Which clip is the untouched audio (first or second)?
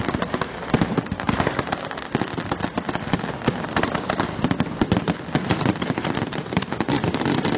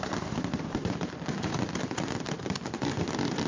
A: first